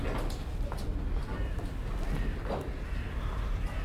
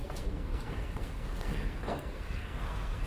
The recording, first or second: first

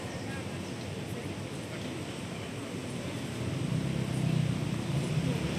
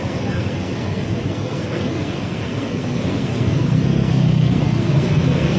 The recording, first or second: first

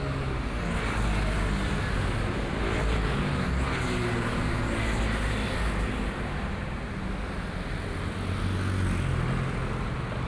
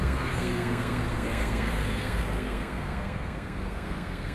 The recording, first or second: first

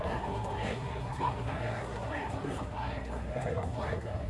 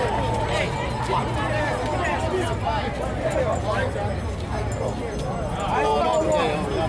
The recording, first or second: second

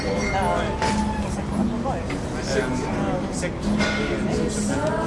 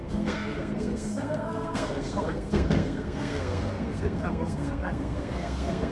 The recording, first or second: first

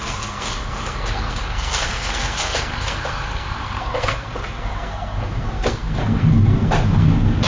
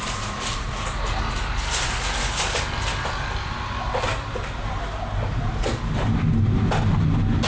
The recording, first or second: second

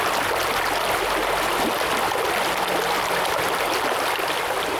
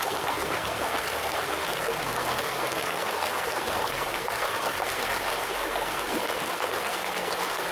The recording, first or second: first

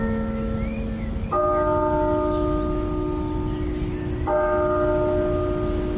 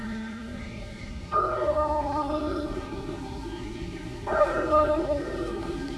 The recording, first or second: first